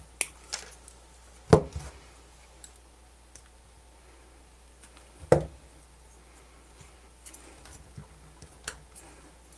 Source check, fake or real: real